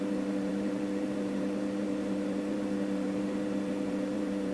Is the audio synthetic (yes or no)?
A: yes